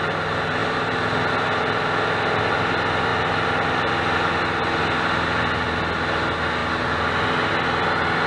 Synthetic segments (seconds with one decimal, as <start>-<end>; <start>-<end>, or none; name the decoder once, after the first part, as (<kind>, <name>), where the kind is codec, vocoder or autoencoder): none